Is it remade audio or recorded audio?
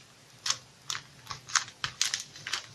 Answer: recorded